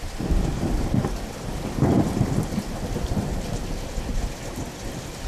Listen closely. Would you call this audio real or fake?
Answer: real